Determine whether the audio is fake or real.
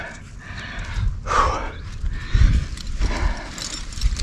real